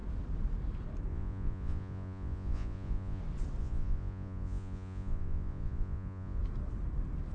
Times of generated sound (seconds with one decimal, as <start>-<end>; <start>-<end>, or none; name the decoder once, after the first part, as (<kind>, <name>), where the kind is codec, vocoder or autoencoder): 1.1-3.2 (vocoder, Vocos); 3.6-6.4